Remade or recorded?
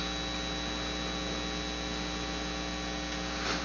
recorded